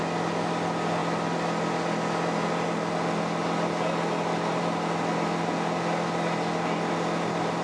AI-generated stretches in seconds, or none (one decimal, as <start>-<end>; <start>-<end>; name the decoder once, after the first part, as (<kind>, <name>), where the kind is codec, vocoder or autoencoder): none